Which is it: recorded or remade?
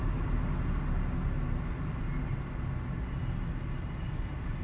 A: recorded